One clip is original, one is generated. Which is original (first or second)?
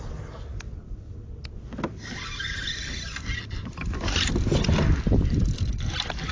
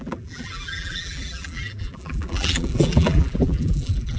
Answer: first